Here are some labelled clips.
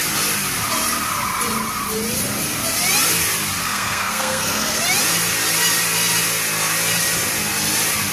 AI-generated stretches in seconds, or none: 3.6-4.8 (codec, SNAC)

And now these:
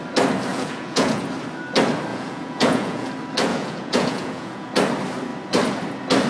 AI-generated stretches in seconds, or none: 0.5-1.2 (vocoder, Vocos); 2.1-3.1; 3.5-4.7

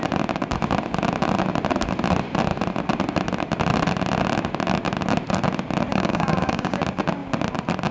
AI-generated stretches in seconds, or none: 5.9-6.8 (codec, DAC)